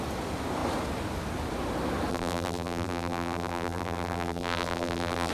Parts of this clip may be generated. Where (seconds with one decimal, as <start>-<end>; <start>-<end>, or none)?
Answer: 2.1-5.3